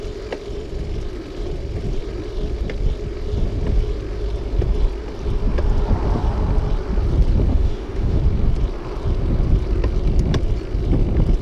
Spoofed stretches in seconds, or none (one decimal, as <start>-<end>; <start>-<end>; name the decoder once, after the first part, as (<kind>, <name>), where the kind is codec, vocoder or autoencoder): 7.5-8.2 (autoencoder, DAC-VAE)